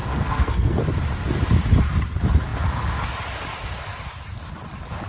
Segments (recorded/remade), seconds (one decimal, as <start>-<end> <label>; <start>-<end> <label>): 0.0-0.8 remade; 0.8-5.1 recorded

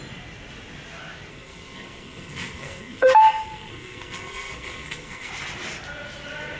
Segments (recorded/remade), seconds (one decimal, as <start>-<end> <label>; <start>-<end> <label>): 0.0-1.3 recorded; 1.3-5.3 remade; 5.3-6.6 recorded

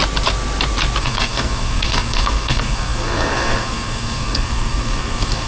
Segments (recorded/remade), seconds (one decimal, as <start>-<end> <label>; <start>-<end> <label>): 0.0-1.0 recorded; 1.0-5.5 remade

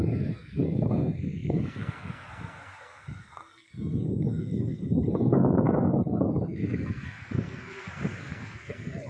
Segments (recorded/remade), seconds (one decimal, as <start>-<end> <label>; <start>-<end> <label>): 0.0-9.1 remade

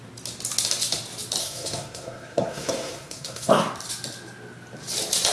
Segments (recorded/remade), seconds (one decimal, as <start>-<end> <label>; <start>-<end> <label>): 0.0-1.4 recorded; 1.4-3.5 remade; 3.5-5.3 recorded